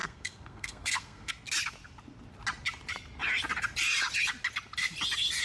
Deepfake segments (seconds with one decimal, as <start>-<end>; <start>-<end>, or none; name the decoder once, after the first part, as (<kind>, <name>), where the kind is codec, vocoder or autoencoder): 0.0-1.3 (codec, SNAC)